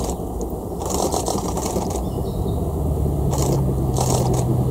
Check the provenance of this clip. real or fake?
real